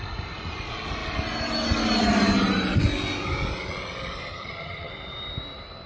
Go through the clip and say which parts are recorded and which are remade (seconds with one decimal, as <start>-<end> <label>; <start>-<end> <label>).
0.0-4.3 recorded; 4.3-4.9 remade; 4.9-5.9 recorded

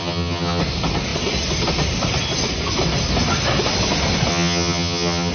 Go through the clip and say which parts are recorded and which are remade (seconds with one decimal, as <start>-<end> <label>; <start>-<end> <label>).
0.0-0.6 remade; 0.6-4.3 recorded; 4.3-5.3 remade

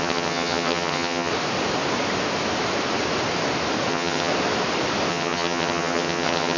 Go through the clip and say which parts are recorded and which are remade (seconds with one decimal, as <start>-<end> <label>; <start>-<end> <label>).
0.0-1.3 remade; 1.3-3.9 recorded; 3.9-4.3 remade; 4.3-5.1 recorded; 5.1-6.6 remade

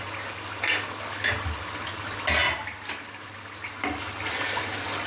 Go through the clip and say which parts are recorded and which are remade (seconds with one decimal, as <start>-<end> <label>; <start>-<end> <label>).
0.0-5.1 recorded